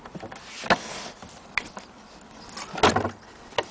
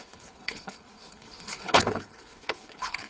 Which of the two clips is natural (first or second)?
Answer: first